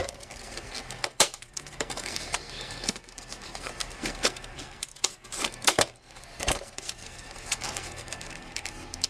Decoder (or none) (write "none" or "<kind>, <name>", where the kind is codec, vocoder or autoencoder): codec, SNAC